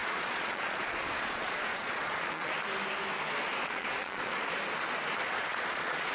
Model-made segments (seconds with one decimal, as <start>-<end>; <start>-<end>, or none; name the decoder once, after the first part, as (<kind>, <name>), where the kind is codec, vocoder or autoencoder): 0.0-2.5 (vocoder, Vocos); 3.6-4.4; 5.5-6.1